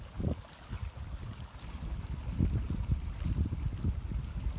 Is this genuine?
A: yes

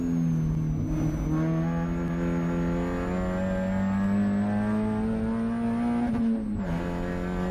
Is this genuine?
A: yes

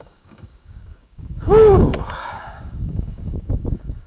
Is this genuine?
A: no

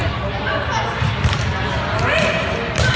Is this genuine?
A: yes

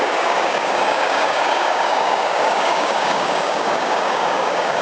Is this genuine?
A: no